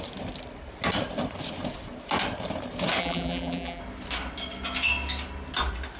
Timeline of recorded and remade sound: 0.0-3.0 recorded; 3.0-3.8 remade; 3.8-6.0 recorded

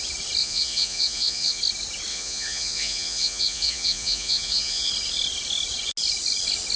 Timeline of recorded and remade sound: 0.0-0.4 recorded; 0.4-1.6 remade; 1.6-2.1 recorded; 2.1-4.9 remade; 4.9-6.8 recorded

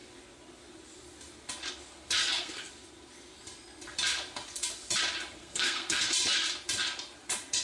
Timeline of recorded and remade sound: 0.0-2.2 recorded; 2.2-2.7 remade; 2.7-5.4 recorded; 5.4-6.1 remade; 6.1-7.6 recorded

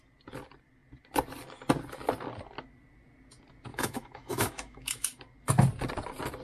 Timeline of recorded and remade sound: 0.0-3.7 recorded; 3.7-5.2 remade; 5.2-6.4 recorded